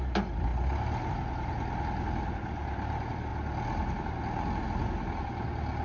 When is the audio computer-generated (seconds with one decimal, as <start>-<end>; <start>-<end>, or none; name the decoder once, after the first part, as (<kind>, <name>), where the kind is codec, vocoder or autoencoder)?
0.0-0.5 (vocoder, BigVGAN v2); 1.1-3.3; 4.6-5.8